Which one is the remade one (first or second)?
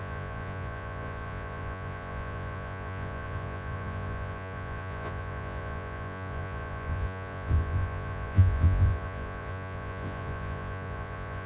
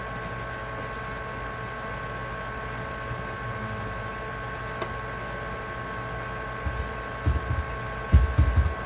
first